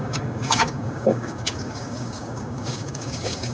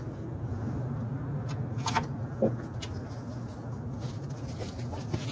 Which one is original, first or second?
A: second